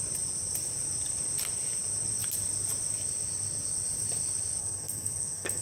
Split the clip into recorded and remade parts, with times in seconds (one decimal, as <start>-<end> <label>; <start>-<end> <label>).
0.0-4.6 recorded; 4.6-5.6 remade